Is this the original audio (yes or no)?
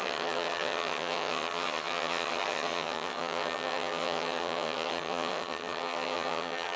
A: no